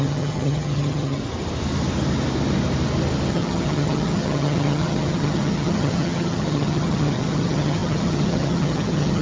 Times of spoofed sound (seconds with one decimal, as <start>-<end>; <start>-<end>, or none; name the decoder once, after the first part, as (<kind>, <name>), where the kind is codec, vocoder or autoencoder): 0.0-1.2 (vocoder, HiFi-GAN); 3.3-9.2